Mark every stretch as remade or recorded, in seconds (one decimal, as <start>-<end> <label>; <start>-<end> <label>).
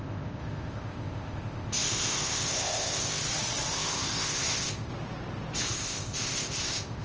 0.0-3.2 remade; 3.2-3.7 recorded; 3.7-4.9 remade; 4.9-5.6 recorded; 5.6-7.0 remade